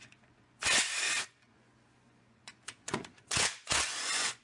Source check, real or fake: fake